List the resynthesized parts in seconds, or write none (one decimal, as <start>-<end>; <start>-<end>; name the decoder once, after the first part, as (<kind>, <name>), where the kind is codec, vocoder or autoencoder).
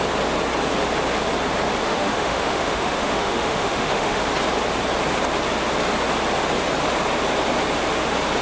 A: 1.8-4.2 (autoencoder, DAC-VAE)